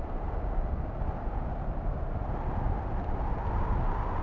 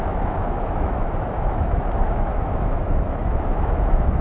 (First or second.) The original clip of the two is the first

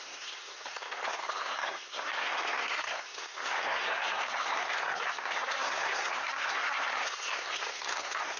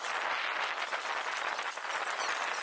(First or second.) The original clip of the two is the second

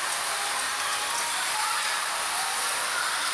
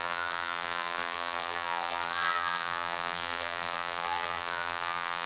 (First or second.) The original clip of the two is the first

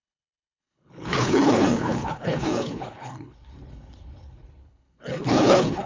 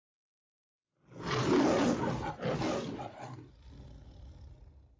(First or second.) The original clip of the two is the second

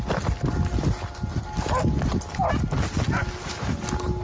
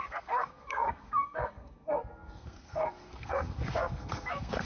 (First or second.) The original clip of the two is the first